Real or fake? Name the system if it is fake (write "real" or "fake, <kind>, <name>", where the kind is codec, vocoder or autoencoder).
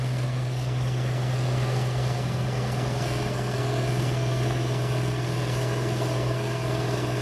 fake, codec, SNAC